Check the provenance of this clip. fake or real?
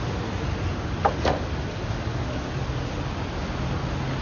real